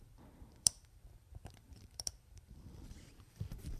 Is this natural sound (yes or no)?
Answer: no